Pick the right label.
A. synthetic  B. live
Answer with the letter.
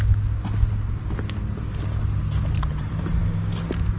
B